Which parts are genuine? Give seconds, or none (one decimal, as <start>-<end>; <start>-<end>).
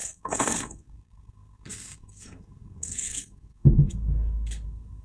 none